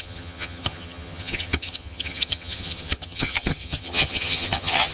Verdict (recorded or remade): remade